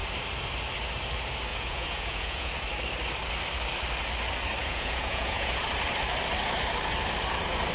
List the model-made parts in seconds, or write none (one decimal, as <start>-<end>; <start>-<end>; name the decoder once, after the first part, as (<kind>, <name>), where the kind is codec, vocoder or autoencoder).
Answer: 1.5-2.5 (vocoder, Vocos); 4.6-5.6